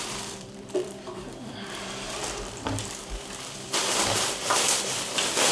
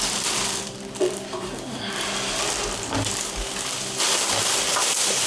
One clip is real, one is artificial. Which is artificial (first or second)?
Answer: first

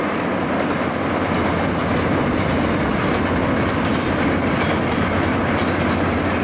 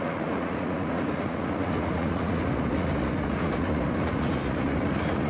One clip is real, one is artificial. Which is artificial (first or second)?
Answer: second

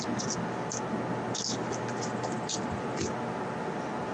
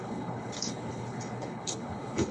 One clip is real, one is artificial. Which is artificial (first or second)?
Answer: second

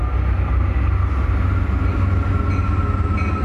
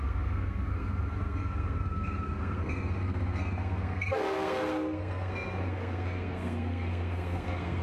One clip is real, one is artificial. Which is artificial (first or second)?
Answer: second